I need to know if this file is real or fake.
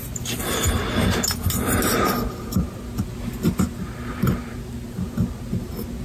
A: real